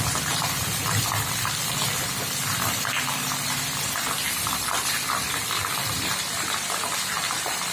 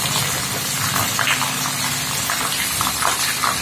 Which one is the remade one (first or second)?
first